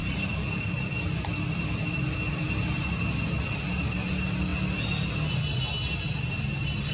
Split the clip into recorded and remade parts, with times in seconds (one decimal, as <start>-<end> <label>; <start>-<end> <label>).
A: 0.0-4.1 remade; 4.1-6.9 recorded